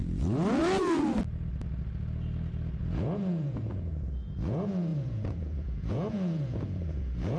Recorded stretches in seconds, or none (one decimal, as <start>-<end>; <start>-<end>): 0.0-2.8